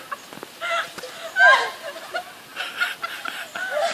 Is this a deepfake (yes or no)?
no